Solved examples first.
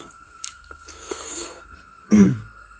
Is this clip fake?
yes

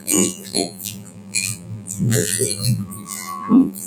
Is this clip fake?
yes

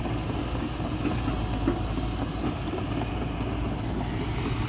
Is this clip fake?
no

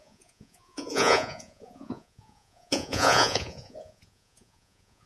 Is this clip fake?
yes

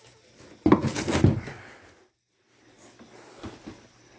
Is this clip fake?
no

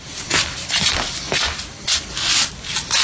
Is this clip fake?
no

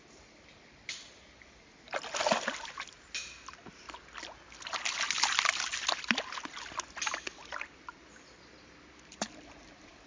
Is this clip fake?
no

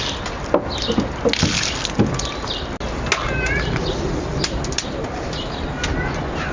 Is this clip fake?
no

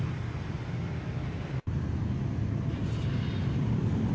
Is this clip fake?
no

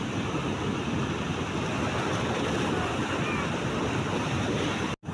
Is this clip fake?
no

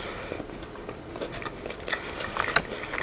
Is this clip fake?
no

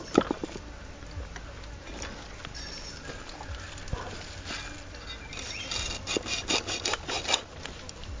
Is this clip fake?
no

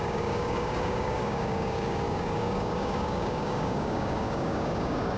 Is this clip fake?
yes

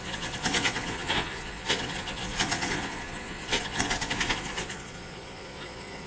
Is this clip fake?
yes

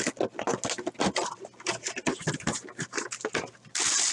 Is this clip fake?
no